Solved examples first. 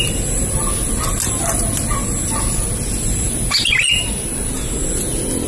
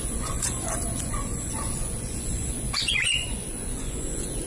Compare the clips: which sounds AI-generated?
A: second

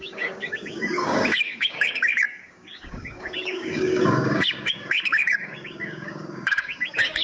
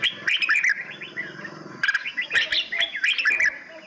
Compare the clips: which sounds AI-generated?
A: first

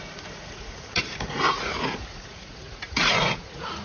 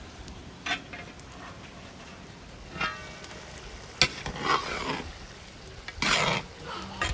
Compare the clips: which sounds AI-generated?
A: first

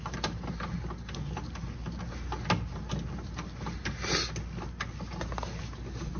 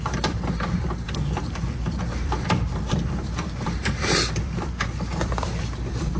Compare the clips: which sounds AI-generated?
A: second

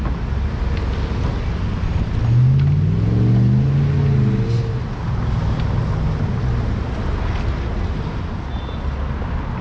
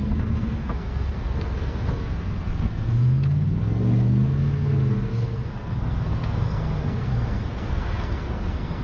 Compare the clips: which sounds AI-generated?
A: second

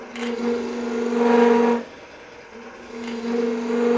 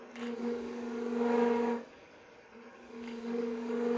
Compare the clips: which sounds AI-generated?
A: second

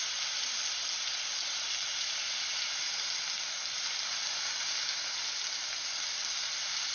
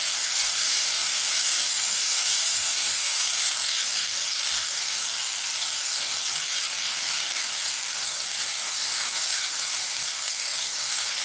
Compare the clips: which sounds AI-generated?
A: second